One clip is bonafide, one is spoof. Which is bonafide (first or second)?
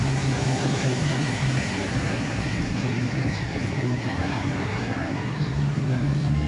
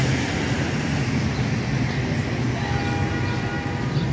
second